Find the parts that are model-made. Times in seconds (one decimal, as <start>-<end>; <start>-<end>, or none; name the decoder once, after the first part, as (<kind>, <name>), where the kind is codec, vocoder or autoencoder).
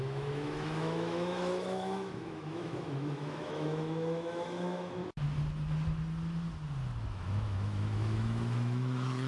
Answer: 0.0-5.0 (autoencoder, DAC-VAE); 7.1-9.3